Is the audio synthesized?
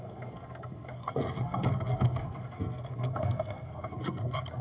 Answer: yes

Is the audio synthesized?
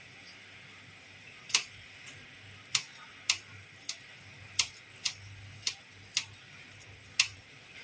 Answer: no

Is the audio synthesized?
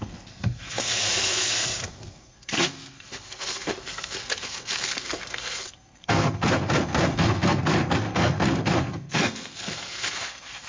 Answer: yes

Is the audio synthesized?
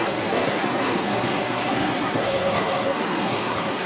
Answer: yes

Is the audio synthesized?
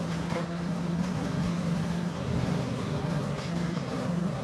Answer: yes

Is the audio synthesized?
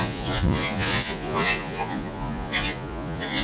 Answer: yes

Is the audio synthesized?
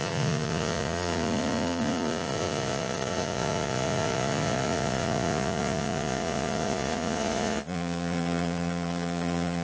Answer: yes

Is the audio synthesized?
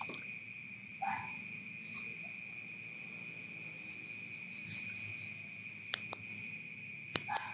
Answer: no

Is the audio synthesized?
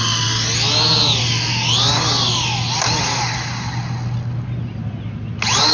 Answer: no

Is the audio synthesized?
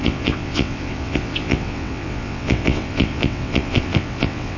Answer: yes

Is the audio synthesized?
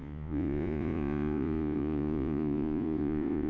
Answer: yes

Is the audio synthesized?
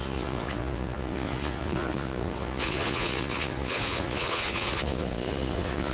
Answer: yes